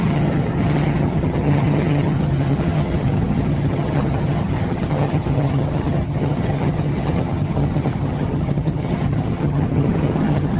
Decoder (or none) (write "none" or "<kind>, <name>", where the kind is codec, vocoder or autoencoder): vocoder, HiFi-GAN